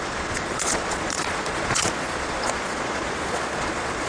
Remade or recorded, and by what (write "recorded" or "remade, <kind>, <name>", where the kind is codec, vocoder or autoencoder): remade, vocoder, Vocos